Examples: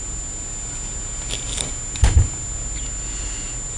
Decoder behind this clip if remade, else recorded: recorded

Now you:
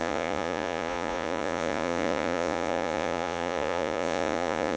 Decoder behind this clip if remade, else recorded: remade, vocoder, Vocos